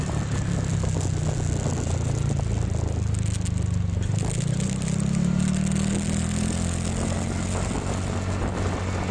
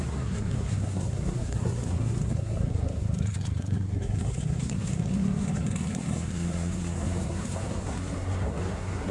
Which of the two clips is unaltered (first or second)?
first